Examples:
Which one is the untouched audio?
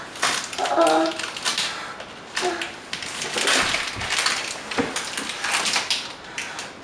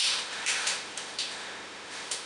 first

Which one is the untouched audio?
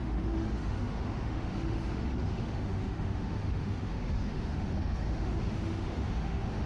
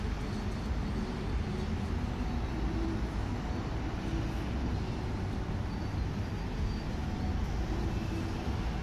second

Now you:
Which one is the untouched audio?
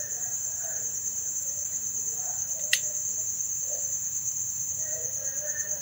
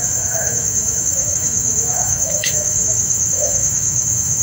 first